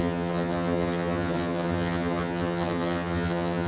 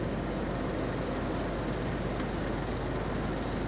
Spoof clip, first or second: first